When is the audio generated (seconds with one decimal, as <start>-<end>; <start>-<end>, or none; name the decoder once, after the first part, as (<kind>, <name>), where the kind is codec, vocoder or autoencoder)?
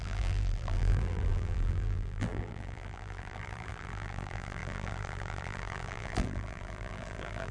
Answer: 0.0-7.5 (vocoder, BigVGAN v2)